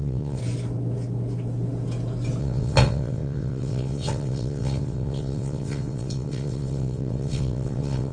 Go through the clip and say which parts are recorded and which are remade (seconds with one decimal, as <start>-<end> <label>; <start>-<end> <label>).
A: 0.0-0.4 remade; 0.4-2.4 recorded; 2.4-8.1 remade